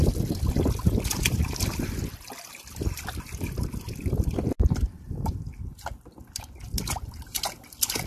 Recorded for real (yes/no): yes